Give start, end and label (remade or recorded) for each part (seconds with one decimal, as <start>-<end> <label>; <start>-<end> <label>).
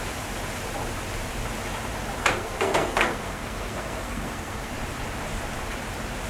0.0-2.2 recorded; 2.2-4.7 remade; 4.7-6.3 recorded